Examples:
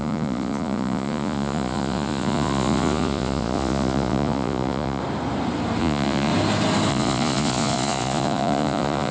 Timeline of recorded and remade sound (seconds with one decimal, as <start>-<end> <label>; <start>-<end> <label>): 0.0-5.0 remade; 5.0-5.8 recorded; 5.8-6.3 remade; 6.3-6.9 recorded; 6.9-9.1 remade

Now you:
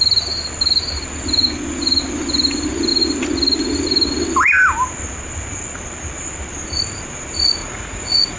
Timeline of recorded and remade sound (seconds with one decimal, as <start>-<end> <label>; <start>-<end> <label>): 0.0-7.6 recorded; 7.6-8.4 remade

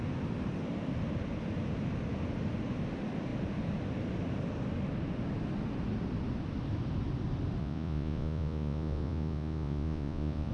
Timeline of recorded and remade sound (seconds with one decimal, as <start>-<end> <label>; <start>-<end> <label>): 0.0-7.6 recorded; 7.6-10.5 remade

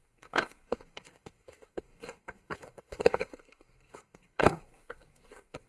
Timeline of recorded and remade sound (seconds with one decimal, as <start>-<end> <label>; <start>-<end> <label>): 0.0-5.7 remade

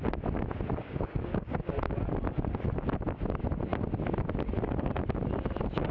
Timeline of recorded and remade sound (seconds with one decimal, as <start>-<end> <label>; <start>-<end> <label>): 0.0-0.8 recorded; 0.8-1.6 remade; 1.6-5.9 recorded